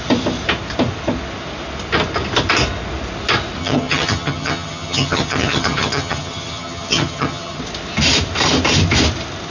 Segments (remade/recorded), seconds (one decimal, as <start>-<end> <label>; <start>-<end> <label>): 0.0-3.6 recorded; 3.6-7.6 remade; 7.6-9.5 recorded